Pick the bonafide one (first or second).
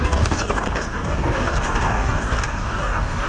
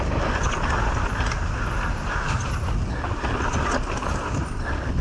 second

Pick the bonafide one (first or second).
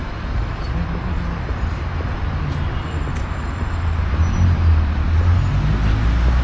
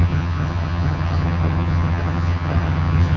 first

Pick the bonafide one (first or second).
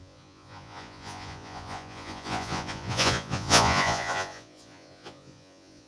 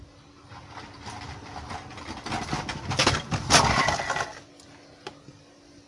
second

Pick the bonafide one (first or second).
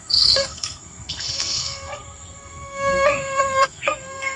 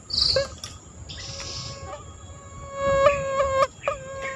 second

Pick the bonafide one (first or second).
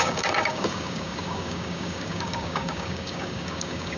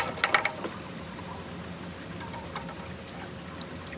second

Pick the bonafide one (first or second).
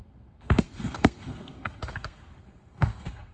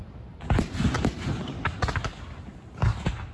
second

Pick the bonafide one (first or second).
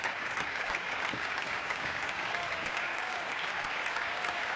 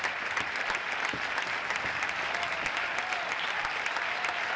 second